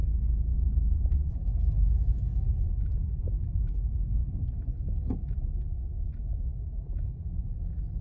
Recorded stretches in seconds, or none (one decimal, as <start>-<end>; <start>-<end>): 0.5-1.1; 2.3-3.2; 4.2-8.0